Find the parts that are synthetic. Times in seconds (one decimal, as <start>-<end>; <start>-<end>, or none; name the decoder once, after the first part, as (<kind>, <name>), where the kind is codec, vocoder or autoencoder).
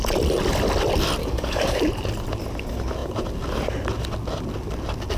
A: 1.2-1.8 (codec, DAC)